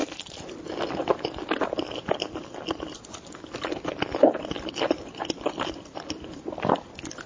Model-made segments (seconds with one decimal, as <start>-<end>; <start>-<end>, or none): none